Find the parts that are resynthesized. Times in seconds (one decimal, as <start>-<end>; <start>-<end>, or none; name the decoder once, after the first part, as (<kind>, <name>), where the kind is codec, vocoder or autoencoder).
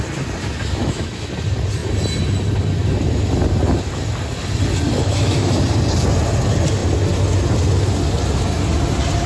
0.8-1.3 (autoencoder, DAC-VAE); 5.0-5.6